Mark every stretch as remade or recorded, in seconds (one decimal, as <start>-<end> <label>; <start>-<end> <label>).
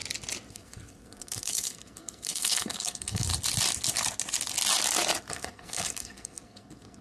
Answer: 0.0-0.5 recorded; 0.5-3.3 remade; 3.3-5.3 recorded; 5.3-7.0 remade